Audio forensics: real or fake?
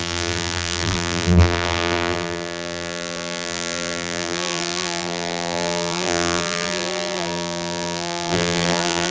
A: fake